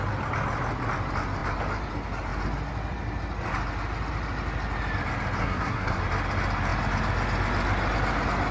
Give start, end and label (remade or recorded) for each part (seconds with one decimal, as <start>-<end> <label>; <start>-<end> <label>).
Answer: 0.0-5.4 recorded; 5.4-6.0 remade; 6.0-8.5 recorded